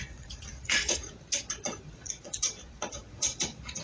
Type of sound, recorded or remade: remade